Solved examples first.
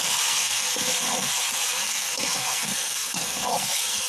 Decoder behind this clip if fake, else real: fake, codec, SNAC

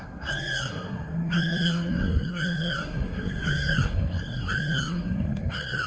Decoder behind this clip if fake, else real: fake, codec, SNAC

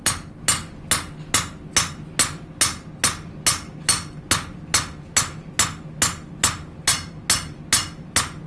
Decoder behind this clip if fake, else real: real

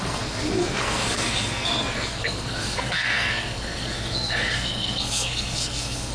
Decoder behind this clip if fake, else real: fake, codec, SNAC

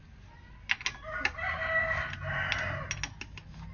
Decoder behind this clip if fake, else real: real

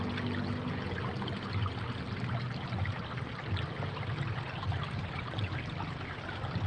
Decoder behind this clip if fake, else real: real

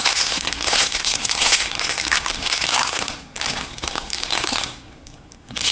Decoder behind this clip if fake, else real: fake, codec, SNAC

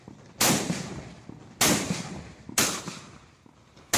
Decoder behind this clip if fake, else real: real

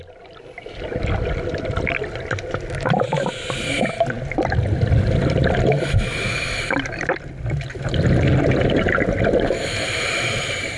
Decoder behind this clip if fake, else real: real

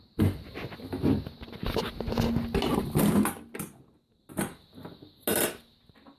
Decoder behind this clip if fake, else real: real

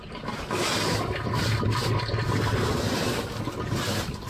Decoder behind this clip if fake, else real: real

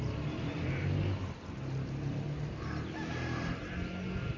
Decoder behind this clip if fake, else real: real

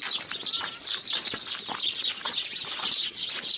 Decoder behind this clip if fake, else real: real